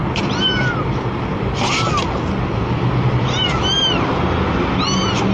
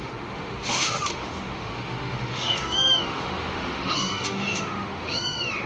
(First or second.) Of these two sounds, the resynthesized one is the second